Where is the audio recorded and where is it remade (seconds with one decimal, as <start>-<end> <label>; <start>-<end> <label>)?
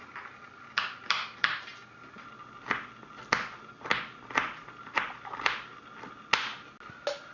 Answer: 0.0-7.3 recorded